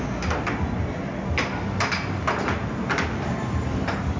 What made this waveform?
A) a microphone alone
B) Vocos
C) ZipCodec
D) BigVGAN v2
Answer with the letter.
A